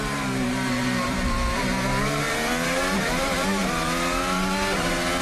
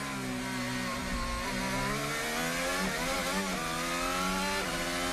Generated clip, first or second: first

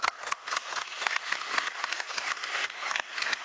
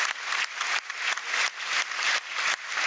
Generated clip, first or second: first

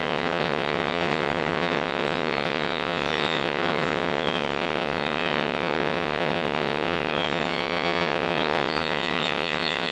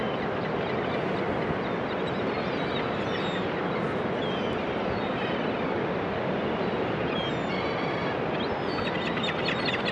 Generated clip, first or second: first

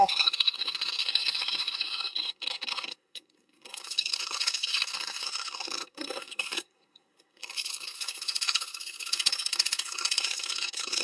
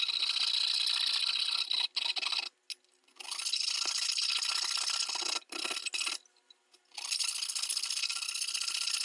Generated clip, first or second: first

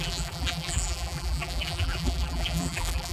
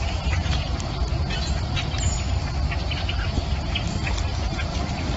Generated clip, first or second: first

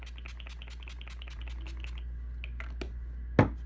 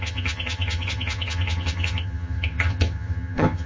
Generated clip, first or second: second